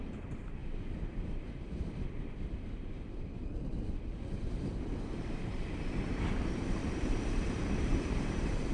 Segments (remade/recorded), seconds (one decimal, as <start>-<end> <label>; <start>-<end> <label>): 0.0-3.4 remade; 3.4-4.4 recorded; 4.4-8.7 remade